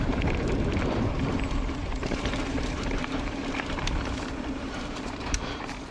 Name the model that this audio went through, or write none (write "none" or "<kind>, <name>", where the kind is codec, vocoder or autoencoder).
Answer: vocoder, BigVGAN v2